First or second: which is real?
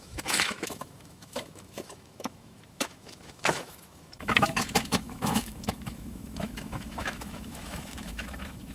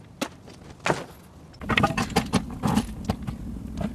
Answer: second